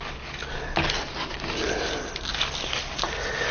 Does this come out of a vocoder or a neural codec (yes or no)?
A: no